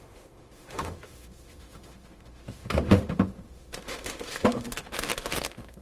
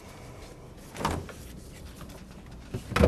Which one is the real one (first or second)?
second